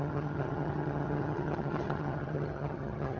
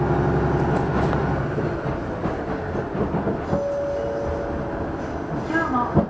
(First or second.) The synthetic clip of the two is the first